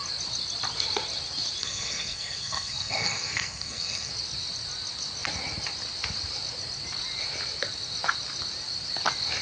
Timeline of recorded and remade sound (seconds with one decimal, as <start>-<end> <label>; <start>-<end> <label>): 0.0-1.6 recorded; 1.6-4.1 remade; 4.1-9.4 recorded